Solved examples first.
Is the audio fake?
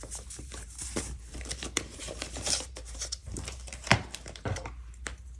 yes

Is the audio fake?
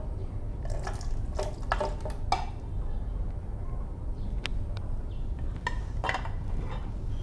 no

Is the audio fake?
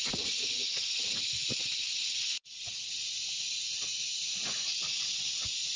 no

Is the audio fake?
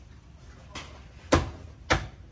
no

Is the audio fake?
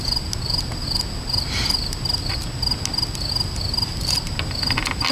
no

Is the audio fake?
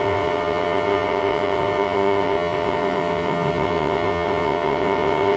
yes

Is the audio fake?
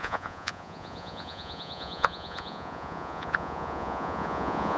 yes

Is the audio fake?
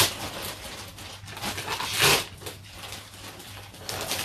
no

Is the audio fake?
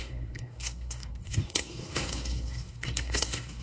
yes